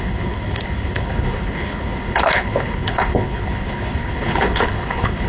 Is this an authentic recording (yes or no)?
no